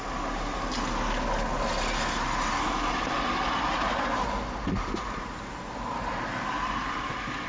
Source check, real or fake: real